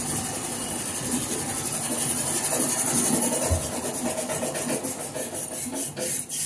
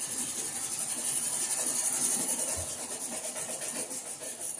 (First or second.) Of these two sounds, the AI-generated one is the second